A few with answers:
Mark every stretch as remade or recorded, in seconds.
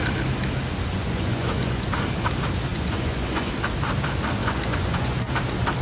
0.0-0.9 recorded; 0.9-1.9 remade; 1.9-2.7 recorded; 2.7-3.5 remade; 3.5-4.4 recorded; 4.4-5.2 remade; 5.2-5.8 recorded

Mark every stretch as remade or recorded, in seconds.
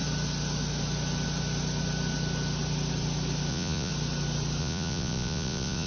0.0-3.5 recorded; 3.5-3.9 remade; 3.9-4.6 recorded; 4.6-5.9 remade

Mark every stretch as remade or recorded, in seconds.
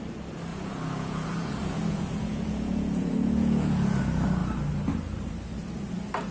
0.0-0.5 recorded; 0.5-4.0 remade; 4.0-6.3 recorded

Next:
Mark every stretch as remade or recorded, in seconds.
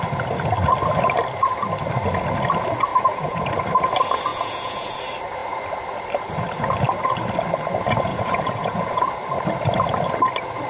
0.0-2.9 recorded; 2.9-3.5 remade; 3.5-4.3 recorded; 4.3-5.0 remade; 5.0-8.1 recorded; 8.1-9.0 remade; 9.0-10.7 recorded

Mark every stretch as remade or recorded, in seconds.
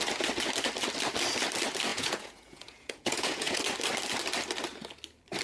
0.0-1.9 recorded; 1.9-3.6 remade; 3.6-5.4 recorded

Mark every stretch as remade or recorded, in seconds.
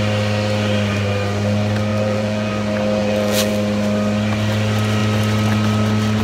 0.0-1.9 recorded; 1.9-2.5 remade; 2.5-3.0 recorded; 3.0-3.5 remade; 3.5-6.2 recorded